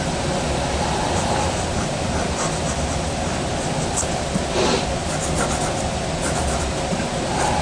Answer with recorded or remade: recorded